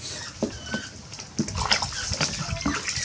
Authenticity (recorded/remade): recorded